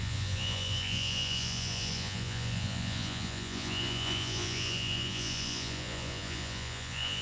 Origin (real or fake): fake